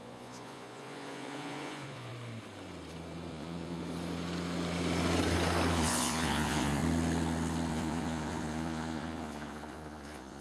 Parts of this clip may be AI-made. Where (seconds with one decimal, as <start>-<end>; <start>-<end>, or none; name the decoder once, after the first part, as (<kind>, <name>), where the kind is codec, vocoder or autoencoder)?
0.0-2.1 (vocoder, Vocos); 3.3-3.8; 5.7-6.8; 7.7-10.4